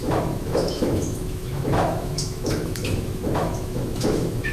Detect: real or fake fake